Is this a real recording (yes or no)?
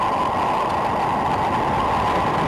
yes